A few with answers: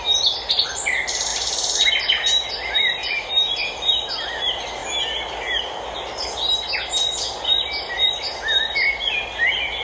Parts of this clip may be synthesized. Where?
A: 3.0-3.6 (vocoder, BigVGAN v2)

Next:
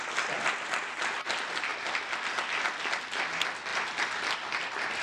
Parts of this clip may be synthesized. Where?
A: none